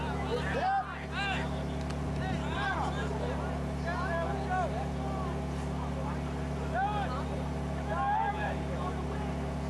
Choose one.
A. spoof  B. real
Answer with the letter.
B